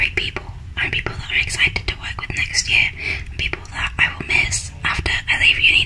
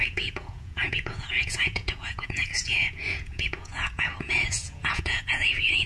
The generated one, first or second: second